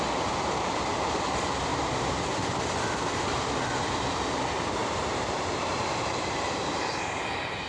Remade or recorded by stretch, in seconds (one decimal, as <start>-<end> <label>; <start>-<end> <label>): 0.0-1.7 recorded; 1.7-2.6 remade; 2.6-4.8 recorded; 4.8-6.7 remade; 6.7-7.7 recorded